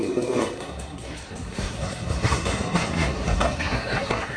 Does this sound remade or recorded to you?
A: remade